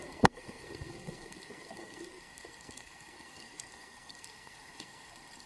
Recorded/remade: remade